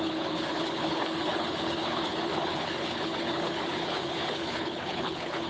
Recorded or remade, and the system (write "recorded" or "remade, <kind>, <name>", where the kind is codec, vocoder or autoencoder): remade, codec, HILCodec